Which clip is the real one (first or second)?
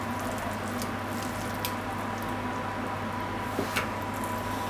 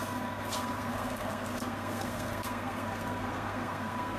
first